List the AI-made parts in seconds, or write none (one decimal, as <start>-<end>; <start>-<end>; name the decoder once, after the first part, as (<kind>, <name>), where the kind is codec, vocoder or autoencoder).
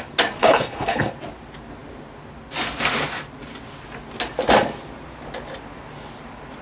0.4-1.1 (codec, HILCodec)